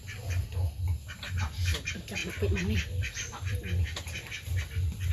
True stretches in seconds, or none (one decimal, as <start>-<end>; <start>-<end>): 0.0-2.2